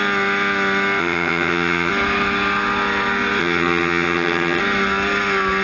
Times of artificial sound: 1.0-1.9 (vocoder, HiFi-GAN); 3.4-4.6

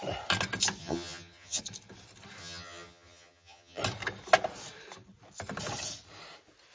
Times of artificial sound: 0.8-1.6 (vocoder, HiFi-GAN); 2.4-3.8

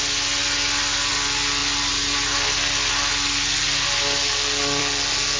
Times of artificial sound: none

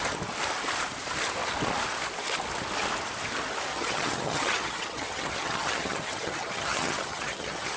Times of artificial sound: 3.7-7.8 (vocoder, HiFi-GAN)

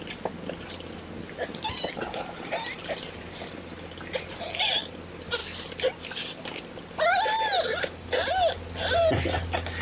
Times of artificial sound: none